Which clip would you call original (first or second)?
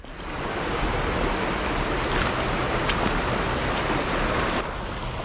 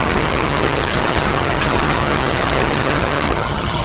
first